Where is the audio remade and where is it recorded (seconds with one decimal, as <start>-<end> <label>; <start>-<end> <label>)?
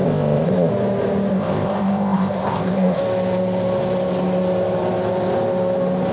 0.0-0.7 remade; 0.7-1.3 recorded; 1.3-3.0 remade; 3.0-6.1 recorded